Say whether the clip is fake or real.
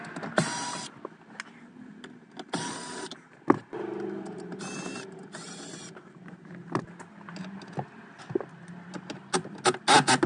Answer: real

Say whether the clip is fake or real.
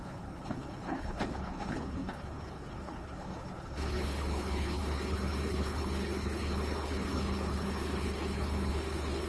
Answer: fake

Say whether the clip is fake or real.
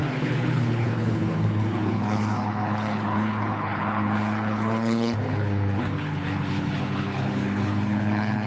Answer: fake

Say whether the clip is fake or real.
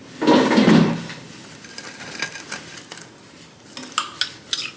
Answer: real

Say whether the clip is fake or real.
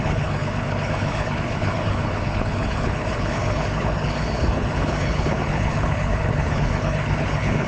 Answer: fake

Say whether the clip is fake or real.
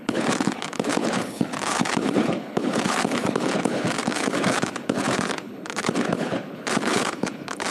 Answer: fake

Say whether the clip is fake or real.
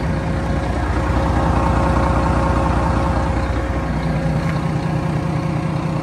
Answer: real